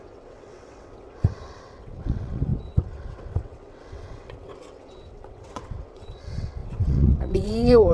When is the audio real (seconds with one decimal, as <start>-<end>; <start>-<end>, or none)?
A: none